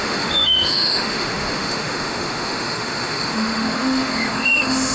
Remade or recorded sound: remade